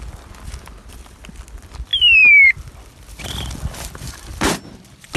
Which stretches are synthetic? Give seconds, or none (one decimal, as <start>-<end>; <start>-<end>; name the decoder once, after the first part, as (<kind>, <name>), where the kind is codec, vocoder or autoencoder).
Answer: none